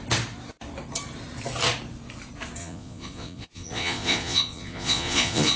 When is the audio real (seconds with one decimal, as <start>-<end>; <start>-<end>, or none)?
0.0-2.6

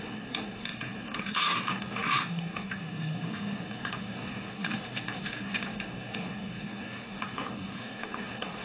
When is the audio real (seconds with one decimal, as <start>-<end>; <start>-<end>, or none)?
none

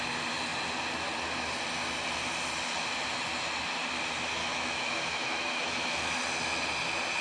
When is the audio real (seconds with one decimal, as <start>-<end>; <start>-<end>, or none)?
0.0-4.4; 6.2-7.2

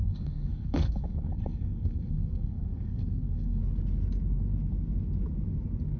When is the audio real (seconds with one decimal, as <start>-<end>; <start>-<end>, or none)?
3.6-6.0